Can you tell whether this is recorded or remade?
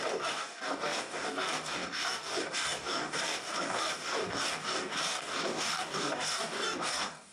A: remade